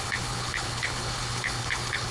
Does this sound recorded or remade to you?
remade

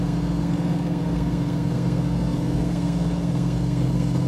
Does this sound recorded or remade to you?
remade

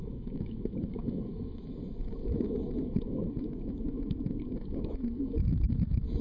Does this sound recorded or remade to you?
remade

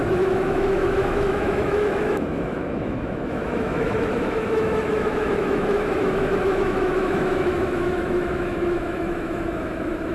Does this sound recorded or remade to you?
remade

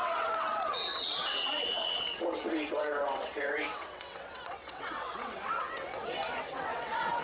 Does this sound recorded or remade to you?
remade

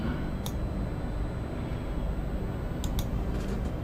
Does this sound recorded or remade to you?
recorded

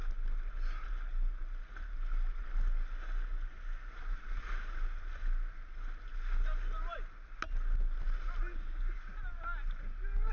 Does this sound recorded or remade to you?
recorded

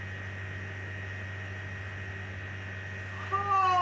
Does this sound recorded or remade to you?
recorded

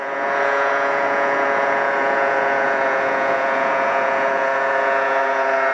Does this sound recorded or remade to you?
remade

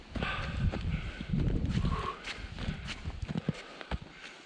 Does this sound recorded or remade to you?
recorded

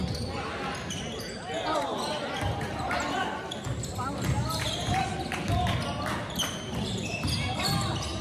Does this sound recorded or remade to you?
recorded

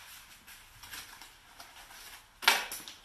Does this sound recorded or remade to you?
recorded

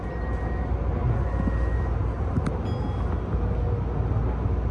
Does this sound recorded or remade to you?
recorded